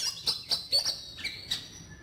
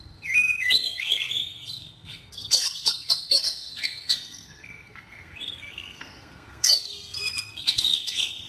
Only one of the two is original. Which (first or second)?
first